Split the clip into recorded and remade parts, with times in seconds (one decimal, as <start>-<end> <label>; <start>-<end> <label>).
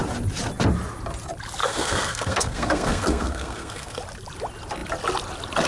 0.0-1.6 recorded; 1.6-4.0 remade; 4.0-5.7 recorded